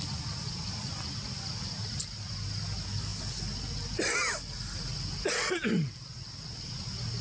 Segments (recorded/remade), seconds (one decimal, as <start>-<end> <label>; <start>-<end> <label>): 0.0-7.2 recorded